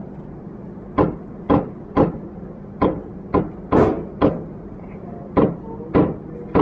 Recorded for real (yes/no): yes